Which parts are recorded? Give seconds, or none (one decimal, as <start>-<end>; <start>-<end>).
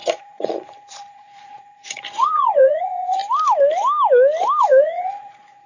3.2-4.6